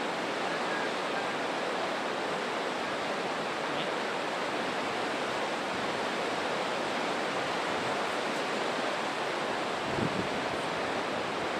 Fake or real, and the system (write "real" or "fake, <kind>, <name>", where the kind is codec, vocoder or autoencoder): real